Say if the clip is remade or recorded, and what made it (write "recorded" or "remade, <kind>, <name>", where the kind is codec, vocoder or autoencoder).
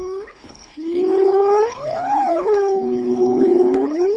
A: remade, codec, HILCodec